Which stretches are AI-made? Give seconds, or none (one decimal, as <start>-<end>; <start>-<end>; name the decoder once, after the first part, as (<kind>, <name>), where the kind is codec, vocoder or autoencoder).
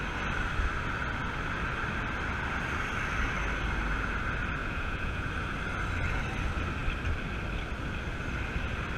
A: 4.6-5.3 (vocoder, Vocos)